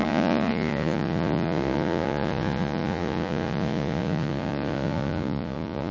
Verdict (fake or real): fake